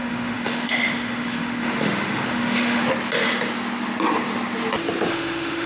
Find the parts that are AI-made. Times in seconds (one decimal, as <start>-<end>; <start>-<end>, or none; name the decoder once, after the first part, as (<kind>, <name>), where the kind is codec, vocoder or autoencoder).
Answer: 0.0-2.8 (autoencoder, DAC-VAE); 5.1-5.7